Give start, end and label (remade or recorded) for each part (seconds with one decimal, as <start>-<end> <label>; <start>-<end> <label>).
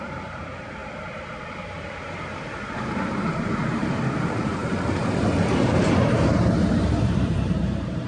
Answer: 0.0-8.1 remade